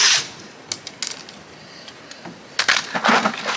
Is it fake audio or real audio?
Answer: real